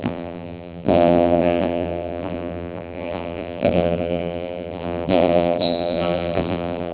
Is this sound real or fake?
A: fake